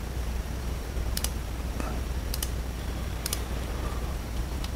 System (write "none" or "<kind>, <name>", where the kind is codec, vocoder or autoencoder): vocoder, BigVGAN v2